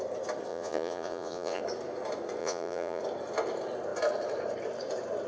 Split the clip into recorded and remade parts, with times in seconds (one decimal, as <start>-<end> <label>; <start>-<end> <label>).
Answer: 0.0-0.5 recorded; 0.5-1.6 remade; 1.6-2.4 recorded; 2.4-3.0 remade; 3.0-5.3 recorded